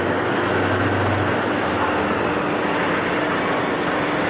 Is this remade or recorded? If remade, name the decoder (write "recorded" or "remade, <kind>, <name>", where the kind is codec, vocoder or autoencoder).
recorded